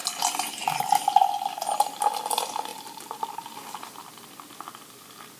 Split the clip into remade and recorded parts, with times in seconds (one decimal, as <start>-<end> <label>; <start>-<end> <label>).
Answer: 0.0-5.4 recorded